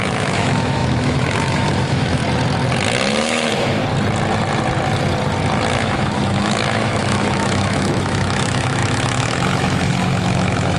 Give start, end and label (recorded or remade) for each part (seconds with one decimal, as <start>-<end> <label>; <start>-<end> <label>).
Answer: 0.0-2.2 remade; 2.2-3.1 recorded; 3.1-3.8 remade; 3.8-5.7 recorded; 5.7-10.8 remade